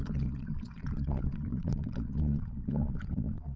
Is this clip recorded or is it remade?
remade